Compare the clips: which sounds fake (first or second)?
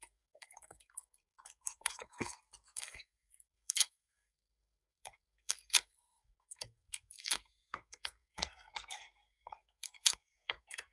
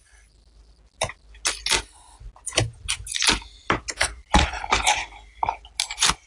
first